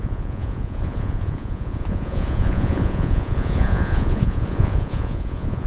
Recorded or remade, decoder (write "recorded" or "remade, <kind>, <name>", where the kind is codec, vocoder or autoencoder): remade, vocoder, Vocos